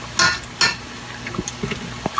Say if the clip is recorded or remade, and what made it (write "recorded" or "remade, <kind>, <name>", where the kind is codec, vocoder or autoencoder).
recorded